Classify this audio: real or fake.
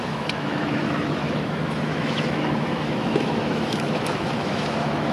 fake